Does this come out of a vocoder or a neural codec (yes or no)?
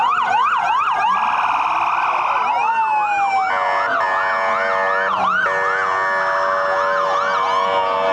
no